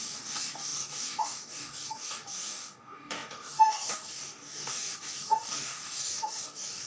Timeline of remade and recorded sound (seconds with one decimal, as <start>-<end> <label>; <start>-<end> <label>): 0.0-6.9 remade